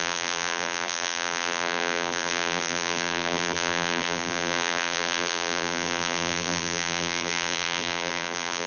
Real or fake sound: fake